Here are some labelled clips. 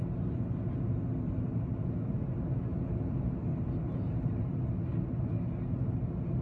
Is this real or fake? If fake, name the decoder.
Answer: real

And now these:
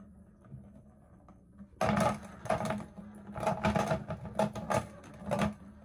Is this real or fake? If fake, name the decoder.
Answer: real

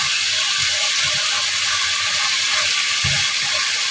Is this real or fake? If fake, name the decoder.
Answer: real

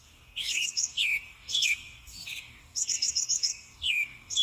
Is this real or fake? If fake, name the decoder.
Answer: fake, codec, DAC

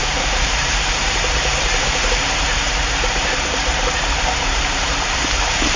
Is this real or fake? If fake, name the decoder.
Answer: fake, vocoder, BigVGAN v2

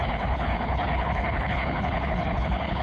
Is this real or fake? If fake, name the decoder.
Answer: fake, codec, HILCodec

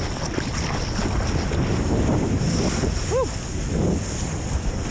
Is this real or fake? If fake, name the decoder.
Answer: real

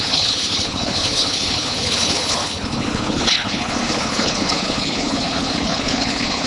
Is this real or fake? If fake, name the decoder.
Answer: fake, codec, HILCodec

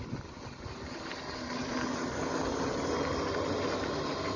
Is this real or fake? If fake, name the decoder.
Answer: real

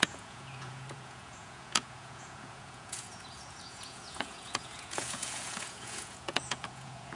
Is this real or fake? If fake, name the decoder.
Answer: fake, vocoder, Vocos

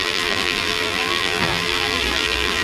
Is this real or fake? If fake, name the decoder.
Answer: fake, vocoder, BigVGAN v2